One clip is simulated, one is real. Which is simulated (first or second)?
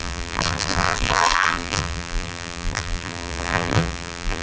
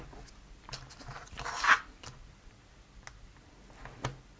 first